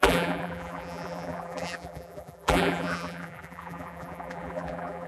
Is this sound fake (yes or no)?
yes